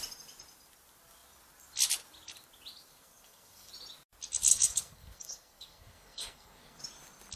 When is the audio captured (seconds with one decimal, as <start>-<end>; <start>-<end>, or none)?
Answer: 0.0-2.9; 3.7-4.5; 6.8-7.4